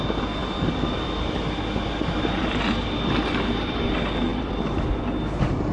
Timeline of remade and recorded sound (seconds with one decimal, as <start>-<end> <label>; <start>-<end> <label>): 0.0-0.4 recorded; 0.4-3.8 remade; 3.8-4.3 recorded; 4.3-5.1 remade; 5.1-5.7 recorded